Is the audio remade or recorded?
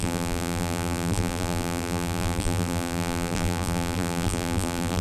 remade